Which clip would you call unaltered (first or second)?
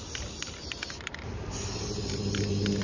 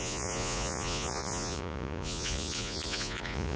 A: first